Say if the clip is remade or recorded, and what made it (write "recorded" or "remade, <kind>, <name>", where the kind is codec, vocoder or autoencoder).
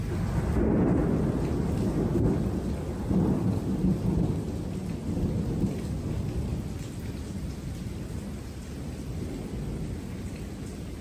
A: recorded